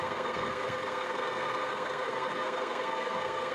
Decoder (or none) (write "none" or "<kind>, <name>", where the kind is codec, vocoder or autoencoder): codec, SNAC